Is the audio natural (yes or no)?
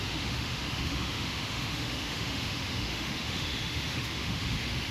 no